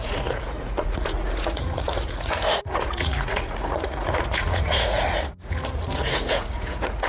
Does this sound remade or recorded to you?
remade